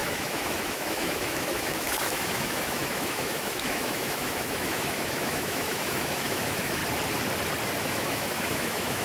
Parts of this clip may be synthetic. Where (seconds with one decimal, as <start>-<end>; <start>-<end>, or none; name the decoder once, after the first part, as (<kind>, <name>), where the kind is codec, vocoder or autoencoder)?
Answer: 0.0-6.8 (autoencoder, DAC-VAE); 7.8-9.0